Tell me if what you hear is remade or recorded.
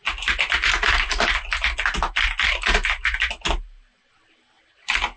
recorded